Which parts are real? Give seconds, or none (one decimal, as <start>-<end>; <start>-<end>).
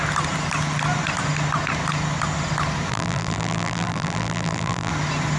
0.0-2.9; 4.9-5.4